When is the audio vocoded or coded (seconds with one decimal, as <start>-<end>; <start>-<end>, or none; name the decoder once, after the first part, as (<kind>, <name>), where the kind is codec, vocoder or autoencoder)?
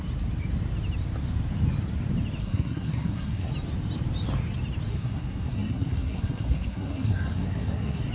2.4-3.5 (codec, SNAC); 4.9-8.1